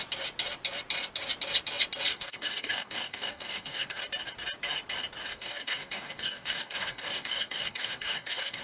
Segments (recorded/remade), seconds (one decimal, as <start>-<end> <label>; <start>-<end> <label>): 0.0-2.1 recorded; 2.1-4.0 remade; 4.0-5.3 recorded; 5.3-8.6 remade